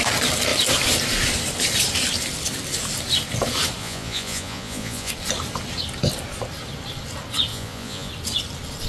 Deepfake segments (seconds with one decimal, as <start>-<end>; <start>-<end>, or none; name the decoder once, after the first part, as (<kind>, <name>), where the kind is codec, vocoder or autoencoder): 3.8-5.1 (vocoder, Vocos); 7.5-8.1